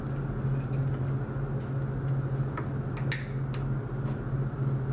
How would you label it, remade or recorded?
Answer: recorded